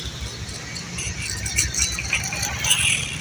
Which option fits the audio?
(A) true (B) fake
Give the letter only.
A